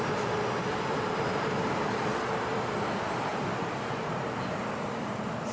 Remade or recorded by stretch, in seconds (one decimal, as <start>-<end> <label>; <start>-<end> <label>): 0.0-2.1 remade; 2.1-2.7 recorded; 2.7-5.5 remade